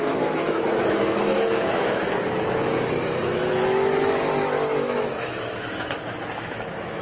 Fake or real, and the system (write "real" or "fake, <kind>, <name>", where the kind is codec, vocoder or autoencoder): fake, autoencoder, DAC-VAE